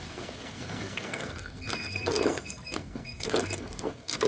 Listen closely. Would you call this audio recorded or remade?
remade